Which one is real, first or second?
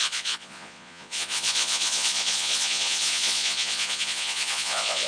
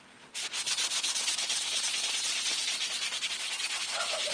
second